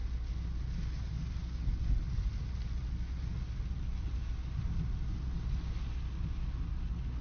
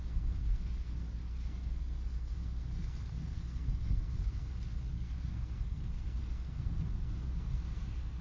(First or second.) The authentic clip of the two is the first